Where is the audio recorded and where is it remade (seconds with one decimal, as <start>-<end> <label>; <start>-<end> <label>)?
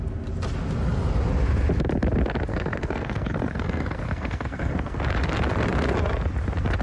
0.0-2.5 recorded; 2.5-5.0 remade; 5.0-6.8 recorded